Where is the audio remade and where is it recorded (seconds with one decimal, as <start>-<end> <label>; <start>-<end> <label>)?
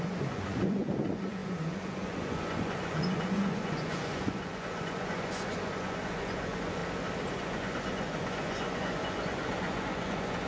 0.0-6.8 remade; 6.8-7.3 recorded; 7.3-10.5 remade